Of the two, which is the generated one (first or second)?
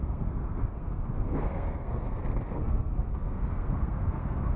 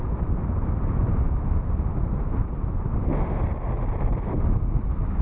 first